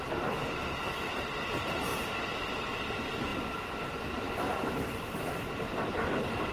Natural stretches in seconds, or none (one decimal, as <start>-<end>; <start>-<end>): 0.0-0.4; 1.2-1.9; 2.5-6.5